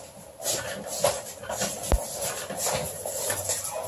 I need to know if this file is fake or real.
real